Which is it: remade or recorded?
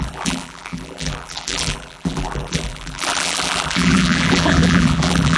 remade